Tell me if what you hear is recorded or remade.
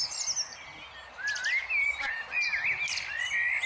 recorded